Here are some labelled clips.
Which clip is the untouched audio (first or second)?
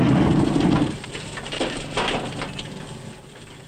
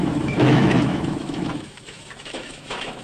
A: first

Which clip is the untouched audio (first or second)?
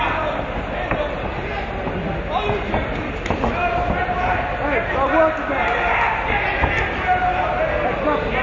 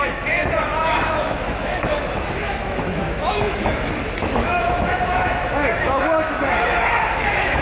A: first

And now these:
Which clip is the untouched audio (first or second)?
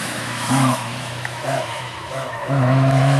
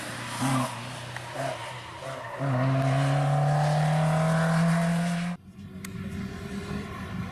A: second